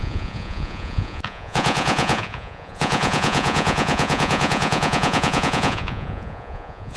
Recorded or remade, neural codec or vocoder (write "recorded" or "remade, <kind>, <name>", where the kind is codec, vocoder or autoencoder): remade, vocoder, Vocos